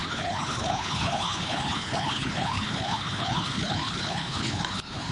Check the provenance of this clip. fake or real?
fake